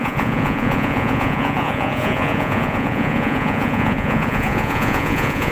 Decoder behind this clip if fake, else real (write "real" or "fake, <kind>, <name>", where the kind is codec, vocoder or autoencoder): fake, vocoder, Vocos